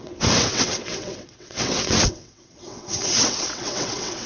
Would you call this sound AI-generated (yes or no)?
yes